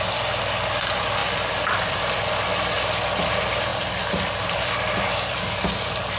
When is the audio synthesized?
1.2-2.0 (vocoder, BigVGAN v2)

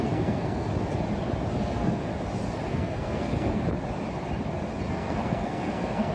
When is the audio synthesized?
0.0-0.7 (codec, SNAC); 1.6-2.1; 2.7-3.6; 4.9-6.1

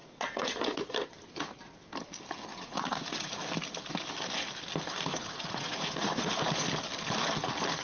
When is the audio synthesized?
0.0-0.9 (vocoder, Vocos); 2.5-3.3; 5.1-6.3

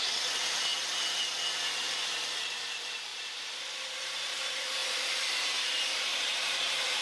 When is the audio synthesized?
0.0-0.7 (vocoder, BigVGAN v2); 1.6-7.0

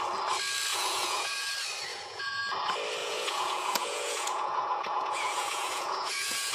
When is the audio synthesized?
0.7-1.5 (vocoder, Vocos); 1.9-2.4; 3.0-6.5

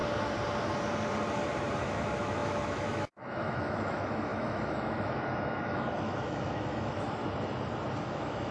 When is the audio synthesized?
1.8-7.2 (autoencoder, DAC-VAE); 8.0-8.5

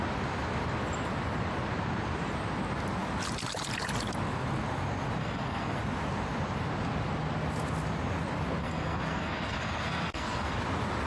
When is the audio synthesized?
5.2-5.8 (codec, SNAC); 8.6-10.6

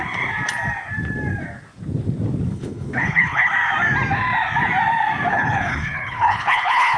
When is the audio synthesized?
2.5-3.5 (codec, HILCodec); 5.3-7.0